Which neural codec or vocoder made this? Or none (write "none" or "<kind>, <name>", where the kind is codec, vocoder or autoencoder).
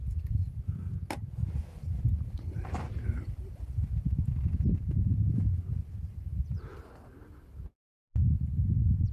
none